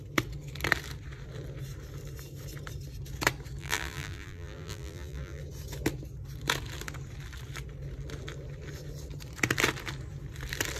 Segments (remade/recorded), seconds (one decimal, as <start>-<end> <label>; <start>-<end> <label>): 0.0-3.6 recorded; 3.6-5.4 remade; 5.4-10.8 recorded